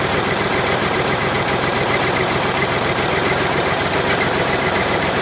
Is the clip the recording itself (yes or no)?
no